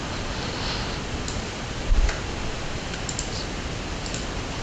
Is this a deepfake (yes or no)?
no